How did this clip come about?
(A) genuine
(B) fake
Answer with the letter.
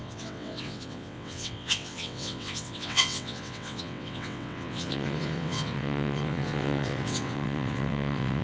B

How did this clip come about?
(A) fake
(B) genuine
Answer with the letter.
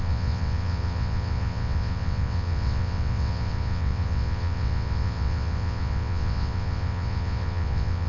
A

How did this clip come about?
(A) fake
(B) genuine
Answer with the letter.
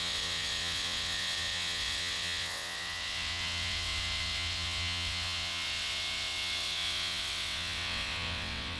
A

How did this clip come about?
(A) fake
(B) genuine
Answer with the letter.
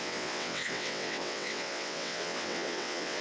A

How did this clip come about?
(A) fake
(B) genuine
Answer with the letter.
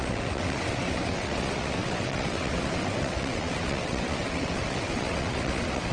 A